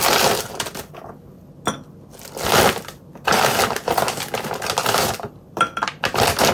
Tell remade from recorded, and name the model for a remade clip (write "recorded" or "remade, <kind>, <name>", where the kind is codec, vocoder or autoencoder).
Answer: recorded